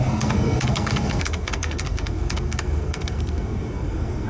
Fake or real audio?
fake